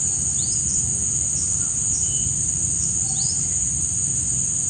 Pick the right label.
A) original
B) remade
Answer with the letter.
A